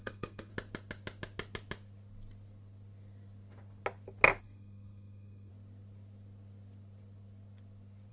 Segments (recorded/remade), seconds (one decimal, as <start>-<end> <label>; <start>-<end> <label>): 0.0-0.5 remade; 0.5-4.4 recorded; 4.4-5.5 remade; 5.5-8.1 recorded